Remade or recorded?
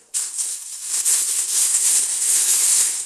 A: remade